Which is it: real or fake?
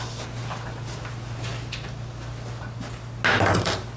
real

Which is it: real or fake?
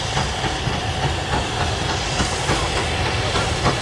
real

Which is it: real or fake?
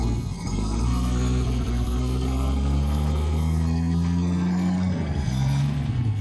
fake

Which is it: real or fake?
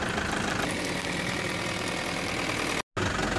real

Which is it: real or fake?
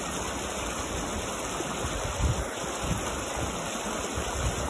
real